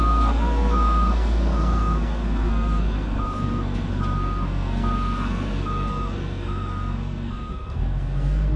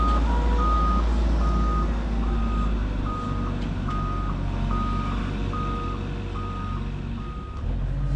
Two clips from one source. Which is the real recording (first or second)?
second